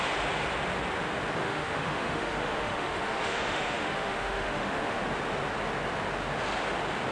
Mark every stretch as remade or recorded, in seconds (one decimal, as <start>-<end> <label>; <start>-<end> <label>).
0.0-1.4 recorded; 1.4-5.0 remade; 5.0-7.1 recorded